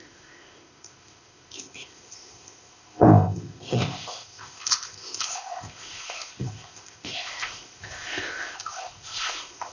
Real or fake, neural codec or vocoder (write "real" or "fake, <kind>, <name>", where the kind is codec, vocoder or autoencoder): fake, codec, ZipCodec